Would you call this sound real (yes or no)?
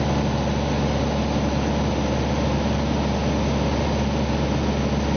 yes